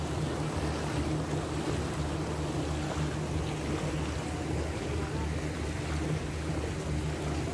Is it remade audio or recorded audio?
recorded